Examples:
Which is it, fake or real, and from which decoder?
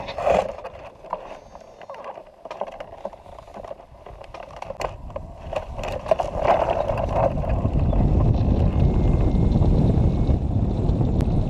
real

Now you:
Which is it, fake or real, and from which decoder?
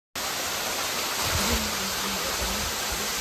real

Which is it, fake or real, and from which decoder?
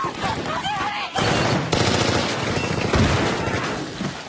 real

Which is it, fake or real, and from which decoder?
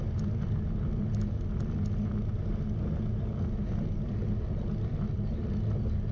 real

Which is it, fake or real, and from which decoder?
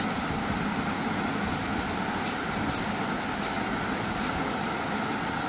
real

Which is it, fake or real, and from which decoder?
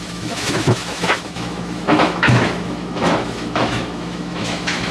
fake, autoencoder, DAC-VAE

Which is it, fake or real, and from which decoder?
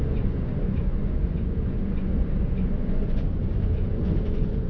fake, vocoder, Vocos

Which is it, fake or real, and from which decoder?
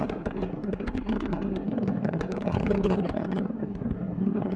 fake, codec, SNAC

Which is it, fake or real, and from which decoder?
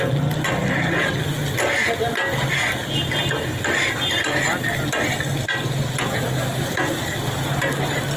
real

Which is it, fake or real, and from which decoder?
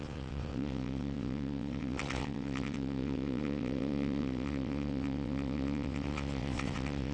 fake, vocoder, WaveNeXt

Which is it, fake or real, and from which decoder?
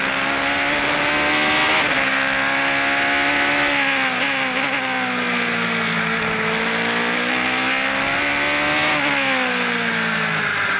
real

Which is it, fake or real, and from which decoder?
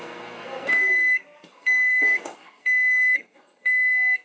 fake, codec, SNAC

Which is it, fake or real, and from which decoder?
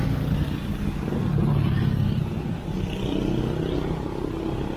real